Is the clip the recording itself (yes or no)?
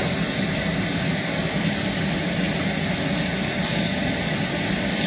yes